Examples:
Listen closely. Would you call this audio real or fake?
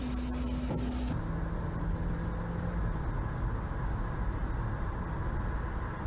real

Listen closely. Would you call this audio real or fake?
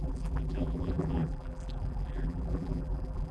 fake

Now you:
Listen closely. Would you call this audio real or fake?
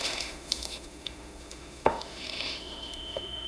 fake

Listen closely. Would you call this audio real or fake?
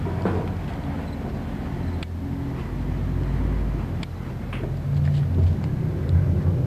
real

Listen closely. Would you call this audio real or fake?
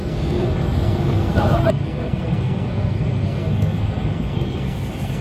fake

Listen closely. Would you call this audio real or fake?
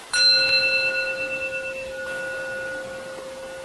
real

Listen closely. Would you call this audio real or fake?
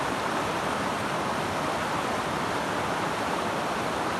real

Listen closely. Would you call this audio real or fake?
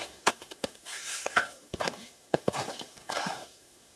fake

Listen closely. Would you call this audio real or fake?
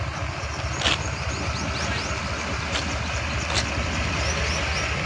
fake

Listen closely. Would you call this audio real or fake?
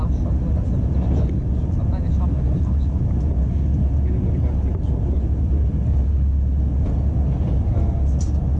real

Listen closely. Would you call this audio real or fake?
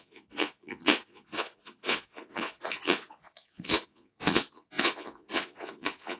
fake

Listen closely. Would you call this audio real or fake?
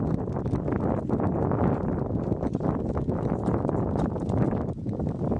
real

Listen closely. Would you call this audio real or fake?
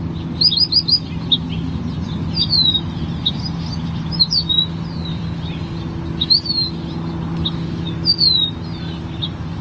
real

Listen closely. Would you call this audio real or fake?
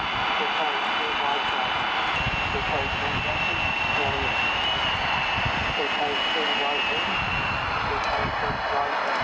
real